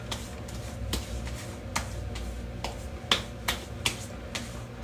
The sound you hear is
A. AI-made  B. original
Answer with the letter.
B